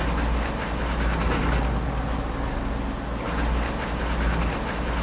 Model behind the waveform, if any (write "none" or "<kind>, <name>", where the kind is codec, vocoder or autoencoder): none